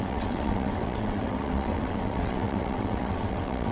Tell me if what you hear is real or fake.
fake